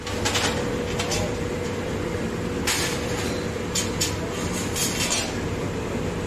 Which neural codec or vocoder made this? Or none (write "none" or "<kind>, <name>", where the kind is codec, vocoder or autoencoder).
none